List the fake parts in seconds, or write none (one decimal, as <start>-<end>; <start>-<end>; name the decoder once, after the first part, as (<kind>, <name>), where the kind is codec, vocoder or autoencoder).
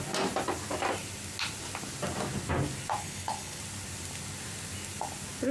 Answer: 3.0-3.6 (codec, HILCodec)